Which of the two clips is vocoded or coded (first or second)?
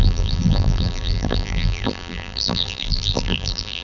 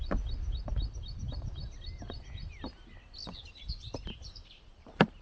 first